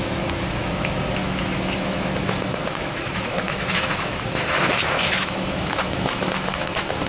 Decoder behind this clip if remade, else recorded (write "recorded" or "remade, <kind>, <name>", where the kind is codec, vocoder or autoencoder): remade, autoencoder, DAC-VAE